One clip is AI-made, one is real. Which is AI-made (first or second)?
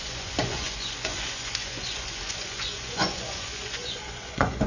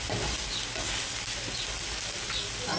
first